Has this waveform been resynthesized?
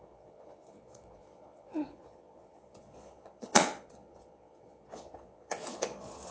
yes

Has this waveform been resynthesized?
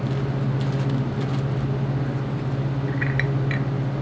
no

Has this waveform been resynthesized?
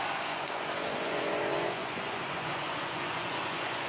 yes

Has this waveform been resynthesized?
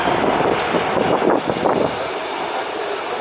no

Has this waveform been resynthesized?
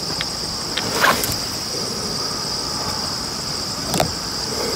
no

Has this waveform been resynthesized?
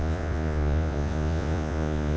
yes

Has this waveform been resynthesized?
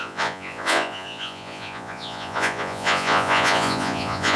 yes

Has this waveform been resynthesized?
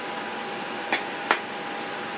no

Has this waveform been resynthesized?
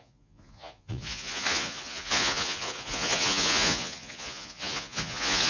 yes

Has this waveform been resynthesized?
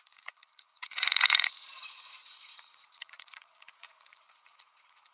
yes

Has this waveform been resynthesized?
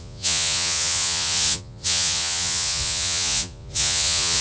yes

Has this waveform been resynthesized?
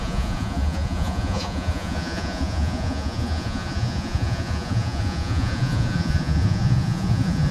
yes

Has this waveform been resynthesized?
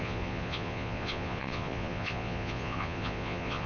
yes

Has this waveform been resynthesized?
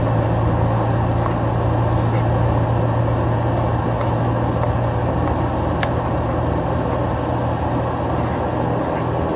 no